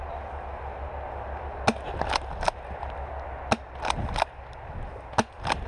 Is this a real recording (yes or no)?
yes